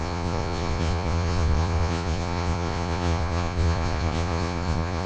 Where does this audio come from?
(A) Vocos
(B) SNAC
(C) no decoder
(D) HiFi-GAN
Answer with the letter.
A